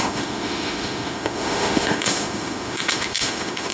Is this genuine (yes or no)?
no